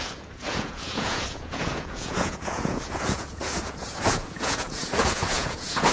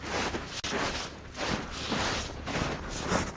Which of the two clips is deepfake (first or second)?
first